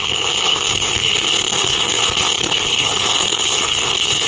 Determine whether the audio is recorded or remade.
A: remade